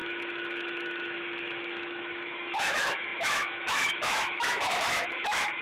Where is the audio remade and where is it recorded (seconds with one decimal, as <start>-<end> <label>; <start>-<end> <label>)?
0.0-5.6 remade